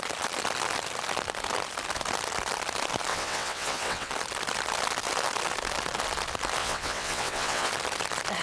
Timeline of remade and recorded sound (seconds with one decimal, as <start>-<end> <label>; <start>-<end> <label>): 0.0-3.1 recorded; 3.1-4.1 remade; 4.1-6.6 recorded; 6.6-7.7 remade; 7.7-8.4 recorded